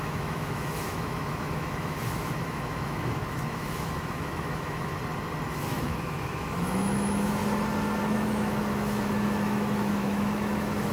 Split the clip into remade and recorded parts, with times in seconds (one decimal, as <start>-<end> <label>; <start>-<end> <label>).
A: 0.0-5.0 remade; 5.0-5.5 recorded; 5.5-7.4 remade; 7.4-8.0 recorded; 8.0-10.9 remade